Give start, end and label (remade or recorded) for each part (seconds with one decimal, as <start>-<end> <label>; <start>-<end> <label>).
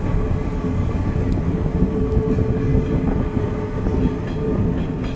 0.0-5.2 recorded